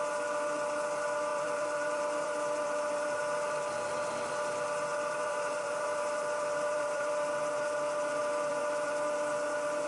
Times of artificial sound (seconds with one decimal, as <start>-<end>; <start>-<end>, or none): 1.3-4.3; 4.9-7.4; 8.2-8.9